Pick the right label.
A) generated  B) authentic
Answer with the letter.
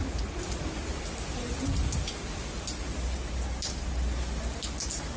B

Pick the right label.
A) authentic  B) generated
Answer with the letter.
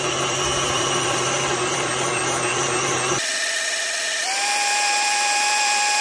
B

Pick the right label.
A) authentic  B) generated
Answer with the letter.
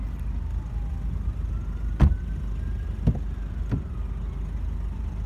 A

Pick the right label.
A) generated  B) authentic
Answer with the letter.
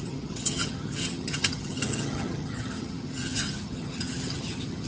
A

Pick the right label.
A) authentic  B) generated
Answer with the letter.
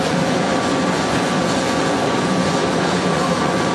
B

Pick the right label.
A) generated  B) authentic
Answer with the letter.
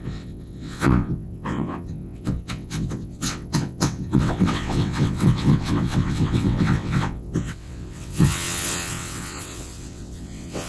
A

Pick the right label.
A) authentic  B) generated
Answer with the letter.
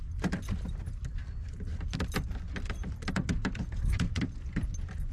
A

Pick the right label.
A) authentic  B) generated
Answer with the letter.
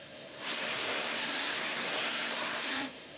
B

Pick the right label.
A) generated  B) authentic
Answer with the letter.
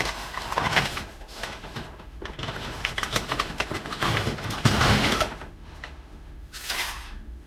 A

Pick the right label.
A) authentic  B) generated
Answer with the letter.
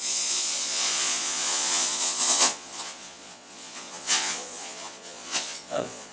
B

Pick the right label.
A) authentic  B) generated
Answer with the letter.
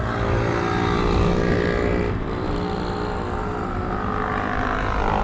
A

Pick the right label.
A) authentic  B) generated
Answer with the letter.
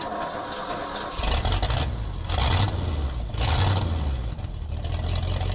A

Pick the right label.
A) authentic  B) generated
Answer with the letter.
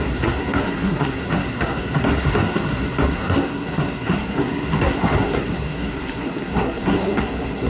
B